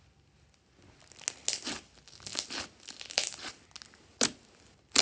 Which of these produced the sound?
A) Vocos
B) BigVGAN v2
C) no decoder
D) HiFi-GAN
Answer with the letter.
C